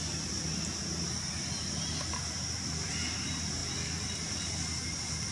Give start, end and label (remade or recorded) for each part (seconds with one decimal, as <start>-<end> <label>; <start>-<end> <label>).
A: 0.0-5.3 recorded